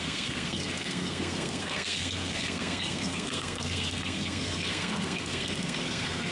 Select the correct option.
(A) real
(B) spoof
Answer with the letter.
B